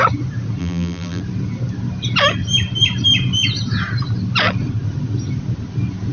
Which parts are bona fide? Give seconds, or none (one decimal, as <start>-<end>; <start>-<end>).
0.0-0.6; 1.2-6.1